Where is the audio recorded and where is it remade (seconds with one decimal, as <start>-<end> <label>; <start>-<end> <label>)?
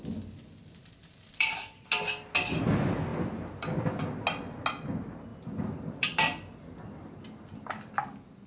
0.0-1.0 recorded; 1.0-1.7 remade; 1.7-3.1 recorded; 3.1-4.0 remade; 4.0-5.3 recorded; 5.3-7.9 remade; 7.9-8.5 recorded